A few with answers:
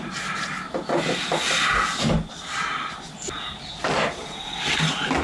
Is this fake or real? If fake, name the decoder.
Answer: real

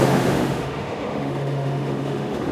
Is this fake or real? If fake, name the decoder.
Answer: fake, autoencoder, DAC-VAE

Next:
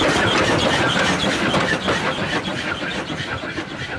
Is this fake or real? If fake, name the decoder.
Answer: real